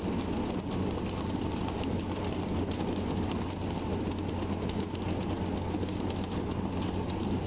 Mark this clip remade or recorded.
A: recorded